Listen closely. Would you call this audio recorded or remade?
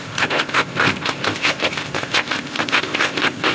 remade